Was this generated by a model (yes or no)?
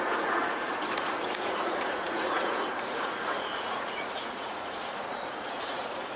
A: yes